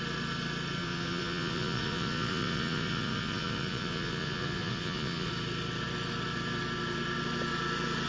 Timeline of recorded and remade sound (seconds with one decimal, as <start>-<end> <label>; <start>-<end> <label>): 0.0-0.8 recorded; 0.8-5.3 remade; 5.3-8.1 recorded